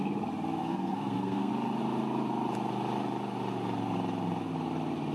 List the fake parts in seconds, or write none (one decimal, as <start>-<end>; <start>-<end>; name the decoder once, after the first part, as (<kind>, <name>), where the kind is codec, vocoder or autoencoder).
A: 0.6-1.5 (codec, SNAC)